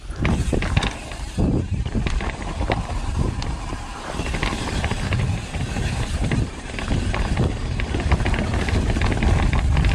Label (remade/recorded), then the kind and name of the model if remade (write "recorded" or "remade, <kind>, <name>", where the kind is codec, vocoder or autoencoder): recorded